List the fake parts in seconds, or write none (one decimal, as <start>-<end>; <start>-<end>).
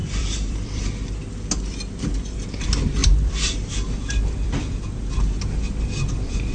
0.0-1.1; 3.0-5.1